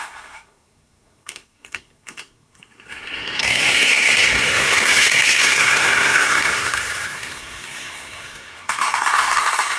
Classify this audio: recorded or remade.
remade